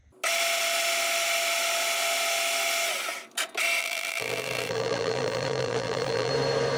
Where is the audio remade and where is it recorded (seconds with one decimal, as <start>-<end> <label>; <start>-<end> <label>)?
0.0-3.8 recorded; 3.8-6.3 remade; 6.3-6.8 recorded